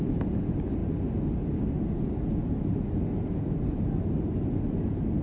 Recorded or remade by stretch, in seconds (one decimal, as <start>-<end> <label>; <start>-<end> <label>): 0.0-5.2 recorded